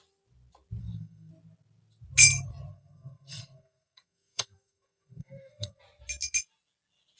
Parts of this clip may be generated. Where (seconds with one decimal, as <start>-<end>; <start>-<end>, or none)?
0.8-1.3; 2.7-5.8